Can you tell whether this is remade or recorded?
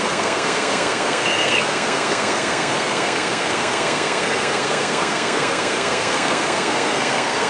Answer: remade